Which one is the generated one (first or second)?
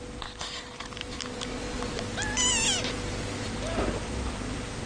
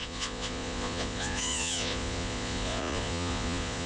second